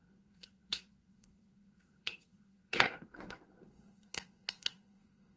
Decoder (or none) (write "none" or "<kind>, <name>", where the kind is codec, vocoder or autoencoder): codec, SNAC